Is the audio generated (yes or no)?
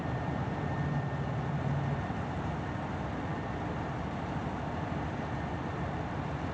yes